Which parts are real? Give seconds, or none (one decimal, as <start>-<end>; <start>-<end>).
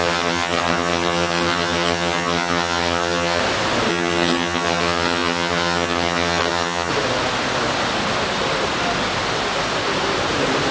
3.4-3.9; 6.9-10.7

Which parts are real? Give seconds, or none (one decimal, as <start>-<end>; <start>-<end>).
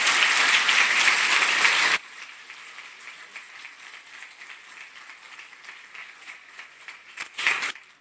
0.0-6.0; 7.5-8.0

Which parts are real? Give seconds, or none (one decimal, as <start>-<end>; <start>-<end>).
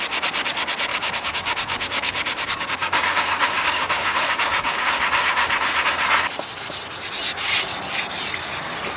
0.0-0.9; 4.8-9.0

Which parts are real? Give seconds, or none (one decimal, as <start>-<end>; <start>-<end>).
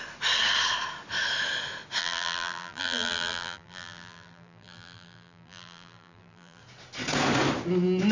0.0-2.0; 6.6-8.1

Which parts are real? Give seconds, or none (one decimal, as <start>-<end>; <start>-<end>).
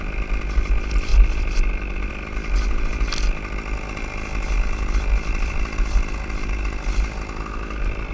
0.0-1.1; 2.1-8.1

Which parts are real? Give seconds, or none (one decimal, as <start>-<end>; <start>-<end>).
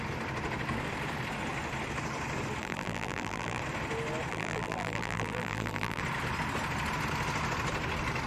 0.0-2.6; 3.6-4.3; 6.0-8.3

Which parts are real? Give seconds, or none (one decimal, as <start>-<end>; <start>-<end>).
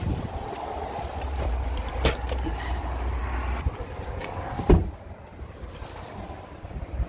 0.0-7.1